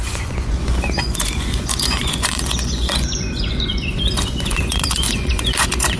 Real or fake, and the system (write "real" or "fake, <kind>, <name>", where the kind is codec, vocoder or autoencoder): fake, vocoder, Vocos